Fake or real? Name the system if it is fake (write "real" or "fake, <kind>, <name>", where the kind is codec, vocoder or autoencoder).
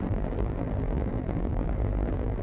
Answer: fake, vocoder, BigVGAN v2